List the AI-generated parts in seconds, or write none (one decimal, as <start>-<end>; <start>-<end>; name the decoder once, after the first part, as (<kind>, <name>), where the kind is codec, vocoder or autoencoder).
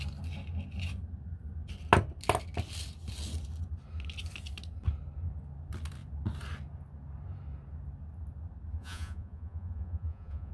8.8-10.5 (vocoder, Vocos)